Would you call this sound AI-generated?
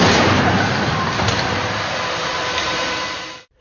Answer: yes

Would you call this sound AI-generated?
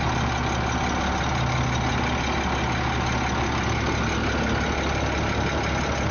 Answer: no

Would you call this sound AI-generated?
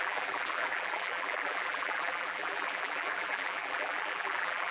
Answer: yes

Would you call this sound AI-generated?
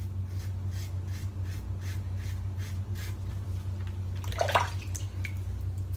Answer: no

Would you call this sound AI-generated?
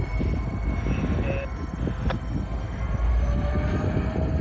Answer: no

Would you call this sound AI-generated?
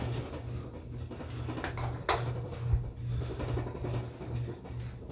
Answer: no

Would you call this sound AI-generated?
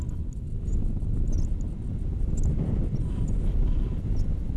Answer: no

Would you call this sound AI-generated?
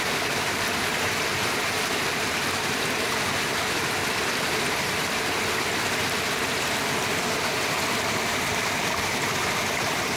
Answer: no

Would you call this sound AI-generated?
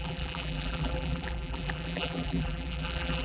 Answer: yes